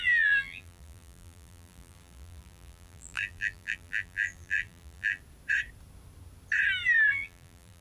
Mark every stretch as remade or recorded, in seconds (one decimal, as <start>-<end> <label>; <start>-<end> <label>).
0.0-5.2 remade; 5.2-7.1 recorded; 7.1-7.8 remade

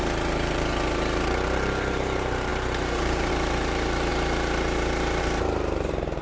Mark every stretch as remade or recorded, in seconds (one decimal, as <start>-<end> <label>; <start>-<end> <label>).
0.0-4.1 remade; 4.1-5.2 recorded; 5.2-6.2 remade